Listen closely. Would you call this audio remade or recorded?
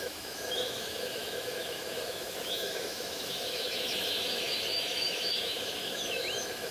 remade